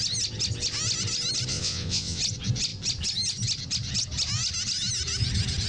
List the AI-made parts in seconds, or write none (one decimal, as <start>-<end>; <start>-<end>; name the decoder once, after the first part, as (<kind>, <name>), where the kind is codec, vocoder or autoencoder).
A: 1.5-2.2 (vocoder, WaveNeXt)